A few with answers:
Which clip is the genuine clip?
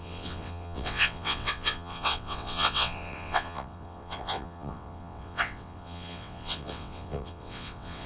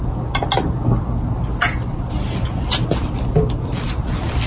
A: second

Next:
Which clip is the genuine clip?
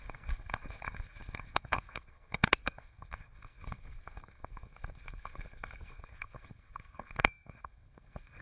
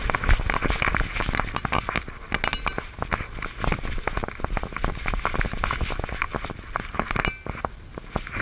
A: second